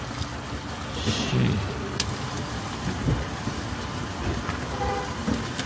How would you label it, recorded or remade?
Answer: recorded